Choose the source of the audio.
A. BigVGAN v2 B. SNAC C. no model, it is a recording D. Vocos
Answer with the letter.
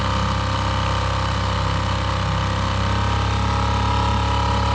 C